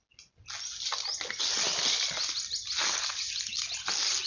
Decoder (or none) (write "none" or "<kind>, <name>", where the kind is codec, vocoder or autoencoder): none